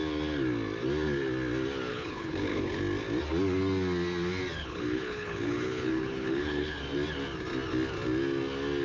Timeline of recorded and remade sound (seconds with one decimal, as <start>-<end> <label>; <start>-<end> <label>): 0.0-1.9 recorded; 1.9-2.8 remade; 2.8-4.6 recorded; 4.6-6.8 remade; 6.8-8.8 recorded